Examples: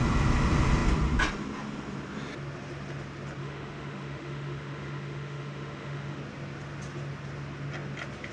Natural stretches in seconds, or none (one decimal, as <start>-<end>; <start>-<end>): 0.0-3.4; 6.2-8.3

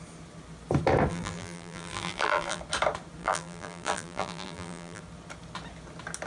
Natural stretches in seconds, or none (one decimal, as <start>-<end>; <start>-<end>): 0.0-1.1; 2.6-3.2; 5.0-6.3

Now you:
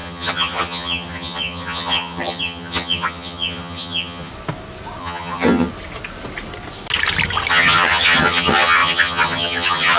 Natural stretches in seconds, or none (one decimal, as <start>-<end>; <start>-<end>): 4.3-5.0; 5.7-7.5

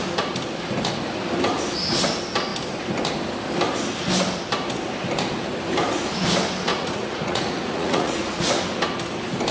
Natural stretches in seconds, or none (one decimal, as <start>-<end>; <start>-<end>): 0.0-6.7; 8.5-9.5

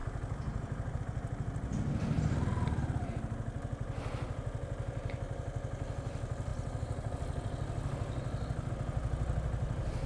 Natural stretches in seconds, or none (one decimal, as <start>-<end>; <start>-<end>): 0.0-10.1